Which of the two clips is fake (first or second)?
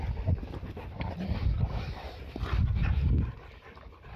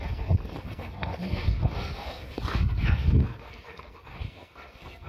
second